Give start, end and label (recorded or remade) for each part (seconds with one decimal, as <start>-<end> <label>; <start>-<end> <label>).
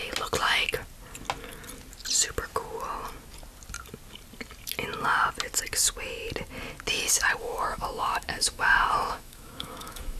0.0-7.4 recorded; 7.4-10.2 remade